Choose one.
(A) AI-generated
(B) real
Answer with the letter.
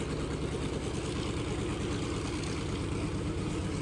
B